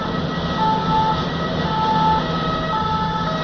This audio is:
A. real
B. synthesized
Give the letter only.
A